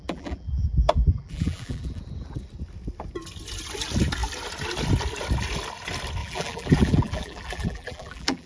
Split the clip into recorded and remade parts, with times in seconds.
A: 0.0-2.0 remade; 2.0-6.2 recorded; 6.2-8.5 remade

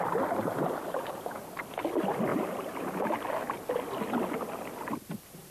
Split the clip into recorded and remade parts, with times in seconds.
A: 0.0-2.3 recorded; 2.3-3.3 remade; 3.3-5.5 recorded

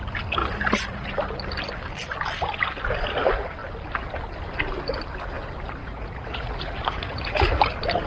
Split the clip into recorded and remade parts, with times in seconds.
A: 0.0-0.4 recorded; 0.4-1.1 remade; 1.1-5.8 recorded; 5.8-7.6 remade; 7.6-8.1 recorded